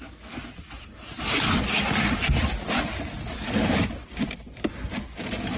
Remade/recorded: recorded